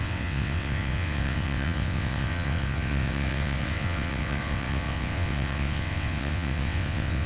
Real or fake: fake